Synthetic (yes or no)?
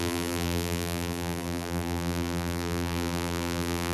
yes